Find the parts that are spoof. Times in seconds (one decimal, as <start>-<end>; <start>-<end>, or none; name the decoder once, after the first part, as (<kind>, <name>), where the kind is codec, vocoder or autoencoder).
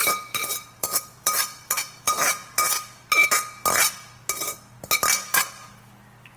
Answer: 0.0-2.4 (vocoder, BigVGAN v2)